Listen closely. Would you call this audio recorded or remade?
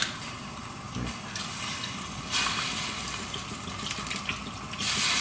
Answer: recorded